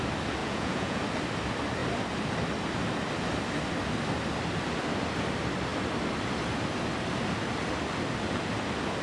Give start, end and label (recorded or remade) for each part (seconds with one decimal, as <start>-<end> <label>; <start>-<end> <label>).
0.0-0.4 recorded; 0.4-1.0 remade; 1.0-9.0 recorded